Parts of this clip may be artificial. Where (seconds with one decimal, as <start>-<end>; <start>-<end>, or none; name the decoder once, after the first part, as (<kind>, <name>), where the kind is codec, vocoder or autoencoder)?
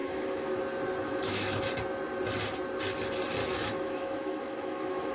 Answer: 0.0-0.6 (autoencoder, DAC-VAE); 1.0-1.6; 3.4-5.1